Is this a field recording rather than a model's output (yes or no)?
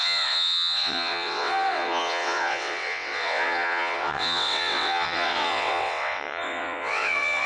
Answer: no